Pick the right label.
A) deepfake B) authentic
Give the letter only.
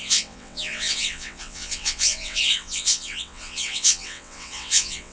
A